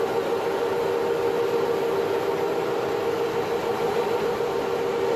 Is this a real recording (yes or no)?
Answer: yes